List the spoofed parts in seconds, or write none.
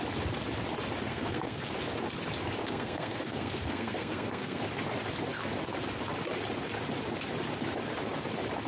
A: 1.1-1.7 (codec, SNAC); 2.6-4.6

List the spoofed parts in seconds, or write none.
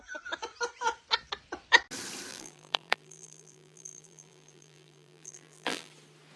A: 2.3-5.9 (vocoder, BigVGAN v2)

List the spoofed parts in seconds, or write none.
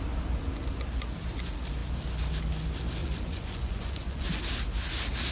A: 3.0-4.4 (vocoder, Vocos)